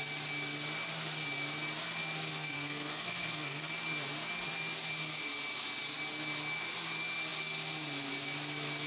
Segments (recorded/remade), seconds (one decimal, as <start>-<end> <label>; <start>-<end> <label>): 0.0-2.3 recorded; 2.3-3.7 remade; 3.7-8.9 recorded

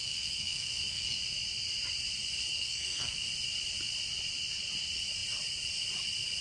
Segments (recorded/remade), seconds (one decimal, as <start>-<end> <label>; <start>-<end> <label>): 0.0-1.2 remade; 1.2-2.5 recorded; 2.5-3.3 remade; 3.3-6.4 recorded

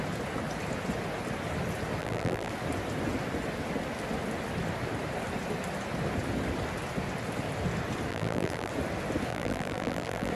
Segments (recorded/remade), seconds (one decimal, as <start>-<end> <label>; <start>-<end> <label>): 0.0-2.0 recorded; 2.0-2.5 remade; 2.5-8.1 recorded; 8.1-8.7 remade; 8.7-9.3 recorded; 9.3-10.3 remade

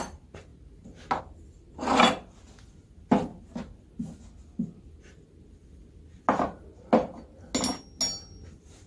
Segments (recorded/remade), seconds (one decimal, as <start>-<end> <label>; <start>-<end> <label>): 0.0-8.9 recorded